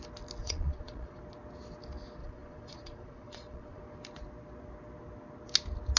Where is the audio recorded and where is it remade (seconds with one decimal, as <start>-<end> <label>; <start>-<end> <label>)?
0.0-0.4 recorded; 0.4-1.2 remade; 1.2-2.2 recorded; 2.2-3.8 remade; 3.8-6.0 recorded